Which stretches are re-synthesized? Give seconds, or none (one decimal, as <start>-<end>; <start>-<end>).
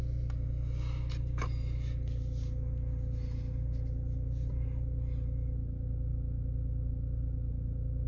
none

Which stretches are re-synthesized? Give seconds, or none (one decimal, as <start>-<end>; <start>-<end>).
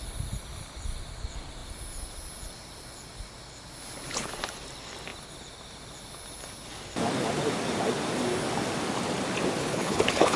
9.6-10.4